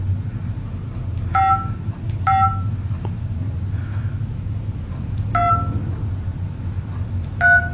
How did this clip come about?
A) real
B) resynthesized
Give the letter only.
A